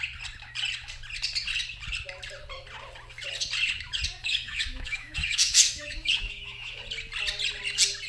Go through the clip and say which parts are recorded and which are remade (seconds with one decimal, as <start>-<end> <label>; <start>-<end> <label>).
0.0-4.2 recorded; 4.2-6.8 remade; 6.8-8.1 recorded